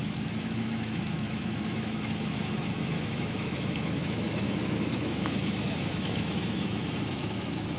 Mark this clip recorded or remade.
remade